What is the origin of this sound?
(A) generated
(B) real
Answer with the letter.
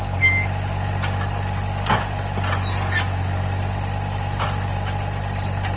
B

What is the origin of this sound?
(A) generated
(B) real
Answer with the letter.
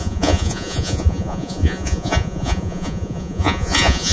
A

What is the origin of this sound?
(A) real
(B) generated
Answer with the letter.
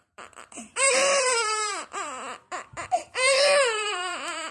B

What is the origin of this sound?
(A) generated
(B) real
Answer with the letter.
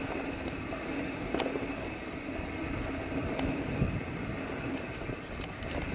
B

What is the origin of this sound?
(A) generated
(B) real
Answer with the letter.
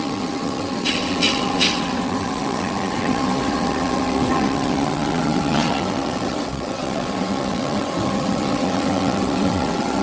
A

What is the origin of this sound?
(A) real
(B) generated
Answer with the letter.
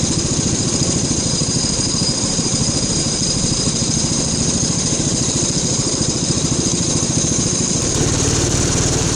B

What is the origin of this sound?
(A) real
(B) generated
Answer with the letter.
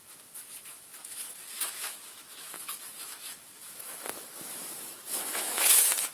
B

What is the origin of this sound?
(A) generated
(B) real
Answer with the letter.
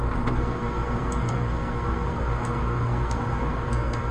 A